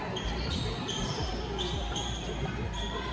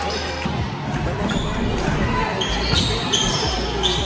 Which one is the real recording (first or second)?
second